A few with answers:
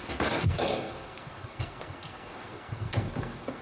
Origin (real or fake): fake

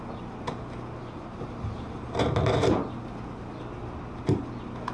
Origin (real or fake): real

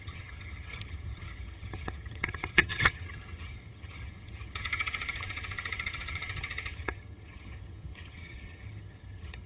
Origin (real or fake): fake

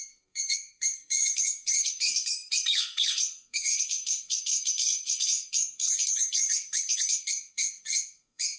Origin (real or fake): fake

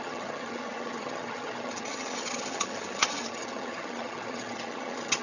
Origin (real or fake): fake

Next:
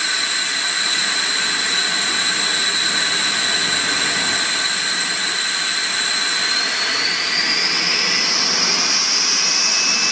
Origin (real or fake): real